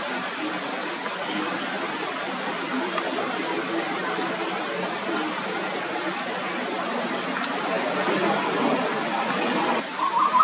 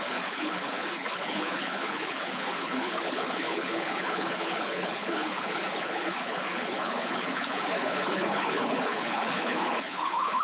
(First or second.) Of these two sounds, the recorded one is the first